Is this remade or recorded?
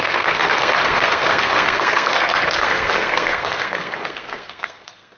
remade